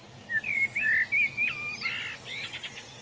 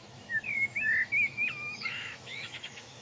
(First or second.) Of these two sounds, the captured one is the first